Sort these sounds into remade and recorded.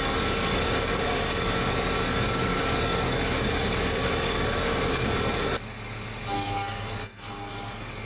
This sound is remade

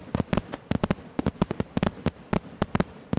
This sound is recorded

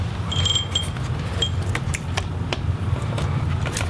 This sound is remade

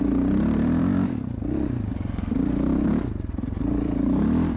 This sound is remade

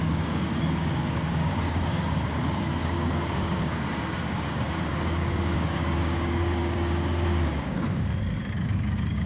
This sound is remade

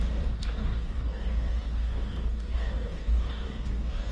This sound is remade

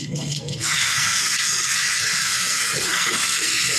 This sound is remade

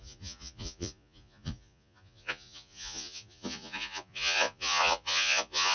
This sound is remade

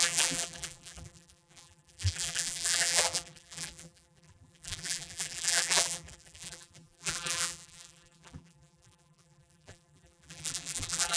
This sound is remade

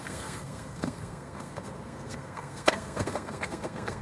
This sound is remade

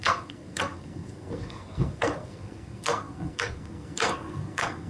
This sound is remade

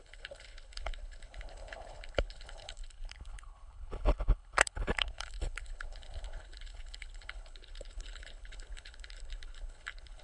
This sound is remade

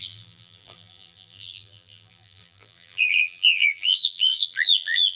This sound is remade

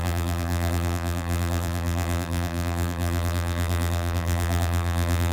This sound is remade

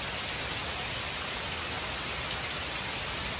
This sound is recorded